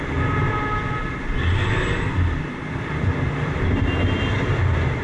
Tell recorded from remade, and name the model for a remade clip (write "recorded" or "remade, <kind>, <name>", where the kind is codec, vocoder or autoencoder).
recorded